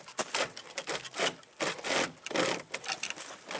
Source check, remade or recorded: recorded